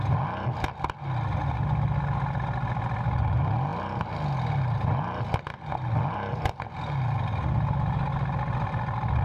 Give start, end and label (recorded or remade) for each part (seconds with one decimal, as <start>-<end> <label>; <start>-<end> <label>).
0.0-9.2 recorded